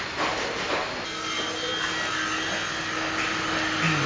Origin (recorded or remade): recorded